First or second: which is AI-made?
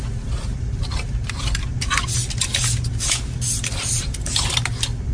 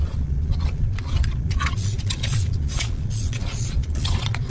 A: second